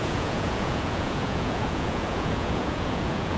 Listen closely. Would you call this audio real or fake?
fake